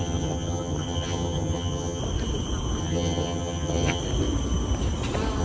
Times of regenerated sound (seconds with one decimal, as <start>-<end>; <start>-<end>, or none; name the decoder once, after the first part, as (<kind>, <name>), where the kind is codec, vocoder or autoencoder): 0.0-2.0 (vocoder, HiFi-GAN); 2.8-4.0